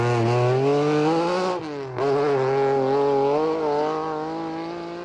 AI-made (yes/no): no